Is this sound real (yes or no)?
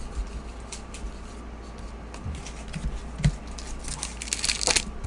yes